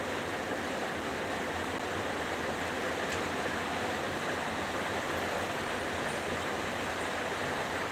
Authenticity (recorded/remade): recorded